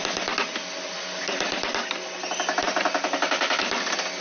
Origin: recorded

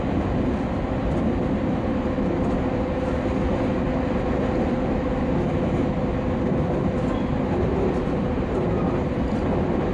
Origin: recorded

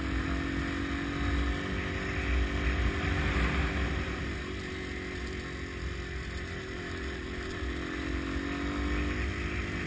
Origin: recorded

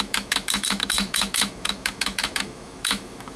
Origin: remade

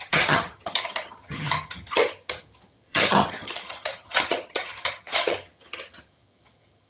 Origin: remade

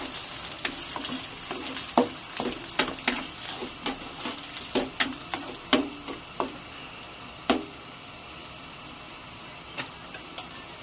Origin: recorded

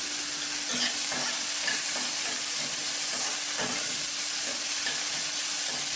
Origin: recorded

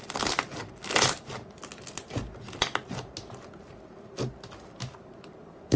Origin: recorded